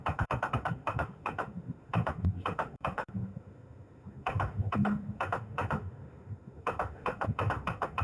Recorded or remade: remade